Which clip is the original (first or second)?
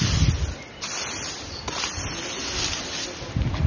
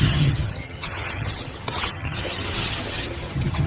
first